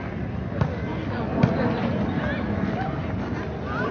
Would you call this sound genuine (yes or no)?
yes